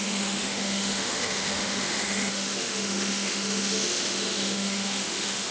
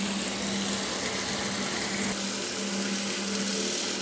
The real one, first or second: second